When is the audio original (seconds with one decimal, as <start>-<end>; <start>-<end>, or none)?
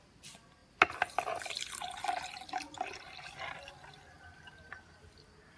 0.0-5.6